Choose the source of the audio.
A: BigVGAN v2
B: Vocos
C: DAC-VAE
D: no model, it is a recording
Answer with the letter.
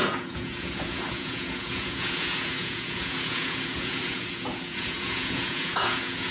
B